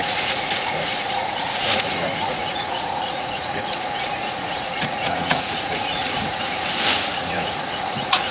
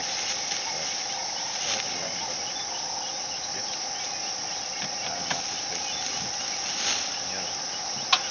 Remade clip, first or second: first